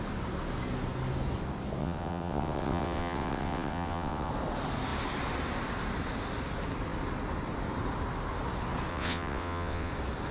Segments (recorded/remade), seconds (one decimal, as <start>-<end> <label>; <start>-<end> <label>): 0.0-1.8 recorded; 1.8-4.3 remade; 4.3-8.9 recorded; 8.9-9.9 remade; 9.9-10.3 recorded